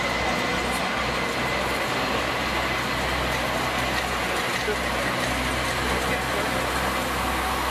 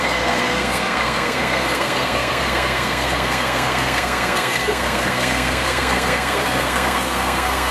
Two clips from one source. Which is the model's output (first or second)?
second